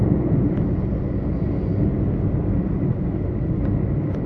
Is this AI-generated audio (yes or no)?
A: no